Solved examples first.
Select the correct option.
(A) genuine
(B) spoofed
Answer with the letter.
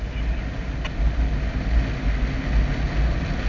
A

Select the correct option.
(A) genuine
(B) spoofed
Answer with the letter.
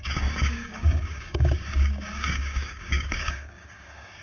B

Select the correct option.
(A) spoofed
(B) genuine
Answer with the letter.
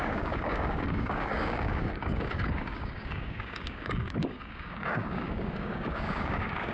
A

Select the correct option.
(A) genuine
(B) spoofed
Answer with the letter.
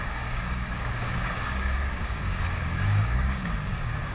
B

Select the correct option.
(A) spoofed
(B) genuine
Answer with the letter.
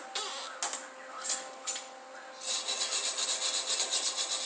B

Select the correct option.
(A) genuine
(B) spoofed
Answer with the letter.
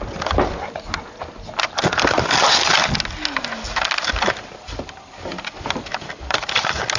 A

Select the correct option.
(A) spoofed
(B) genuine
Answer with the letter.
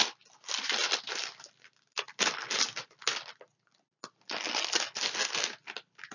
B